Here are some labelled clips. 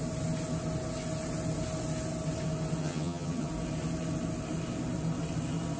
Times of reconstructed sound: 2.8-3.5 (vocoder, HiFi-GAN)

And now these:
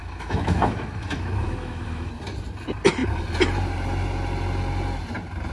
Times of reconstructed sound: 0.0-2.1 (autoencoder, DAC-VAE)